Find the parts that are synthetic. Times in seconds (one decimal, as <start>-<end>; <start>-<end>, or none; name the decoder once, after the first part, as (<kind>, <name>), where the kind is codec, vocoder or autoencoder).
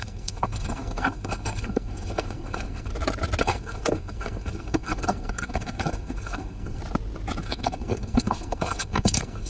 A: 0.0-2.9 (codec, SNAC); 3.4-6.8; 7.4-9.5